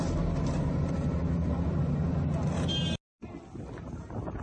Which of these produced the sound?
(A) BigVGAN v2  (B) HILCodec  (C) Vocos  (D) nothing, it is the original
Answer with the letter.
D